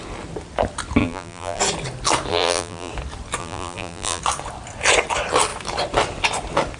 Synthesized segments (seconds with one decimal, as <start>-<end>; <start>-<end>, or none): 1.0-1.6; 2.3-2.9; 3.4-4.2